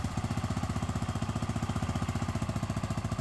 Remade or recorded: recorded